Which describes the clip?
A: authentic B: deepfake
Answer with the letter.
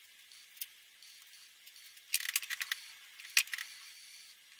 A